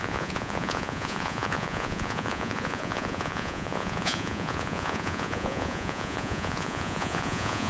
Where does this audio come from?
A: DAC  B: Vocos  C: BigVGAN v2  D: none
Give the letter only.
B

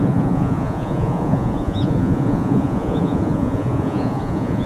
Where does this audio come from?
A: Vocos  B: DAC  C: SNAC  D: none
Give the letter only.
A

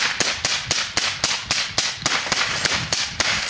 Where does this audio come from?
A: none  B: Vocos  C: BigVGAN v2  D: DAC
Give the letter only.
A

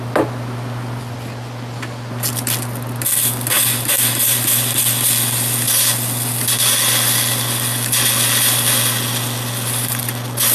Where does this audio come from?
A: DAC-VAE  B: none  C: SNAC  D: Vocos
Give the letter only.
B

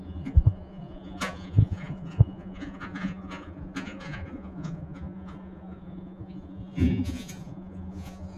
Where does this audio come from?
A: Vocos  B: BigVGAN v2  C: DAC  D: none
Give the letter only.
A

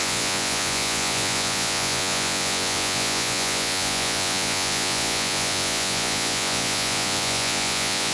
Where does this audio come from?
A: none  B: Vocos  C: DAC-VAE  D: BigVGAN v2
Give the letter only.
B